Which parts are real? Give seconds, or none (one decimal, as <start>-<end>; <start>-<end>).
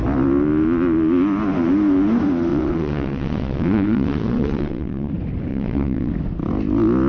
0.0-2.5; 5.1-5.5; 6.1-7.1